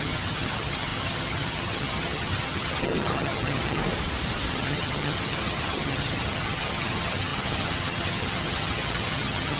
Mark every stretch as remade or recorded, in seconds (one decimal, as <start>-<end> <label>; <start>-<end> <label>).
0.0-3.8 remade; 3.8-4.5 recorded; 4.5-9.6 remade